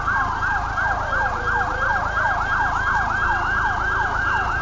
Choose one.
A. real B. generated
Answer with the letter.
A